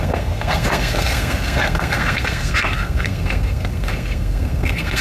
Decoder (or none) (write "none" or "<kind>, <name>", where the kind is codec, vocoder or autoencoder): codec, SNAC